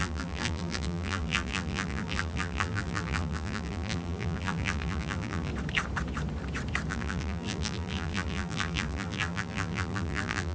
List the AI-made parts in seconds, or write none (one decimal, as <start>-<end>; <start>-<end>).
0.0-5.5; 6.9-10.5